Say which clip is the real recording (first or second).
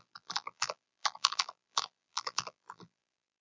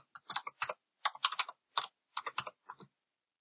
second